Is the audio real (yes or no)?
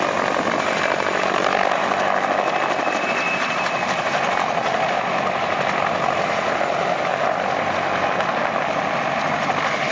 yes